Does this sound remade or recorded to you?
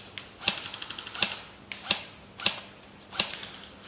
recorded